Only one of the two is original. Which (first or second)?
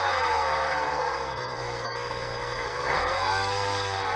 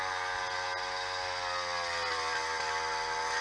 second